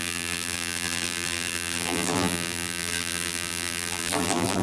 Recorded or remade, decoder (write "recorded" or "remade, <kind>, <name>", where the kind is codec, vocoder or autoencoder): remade, vocoder, BigVGAN v2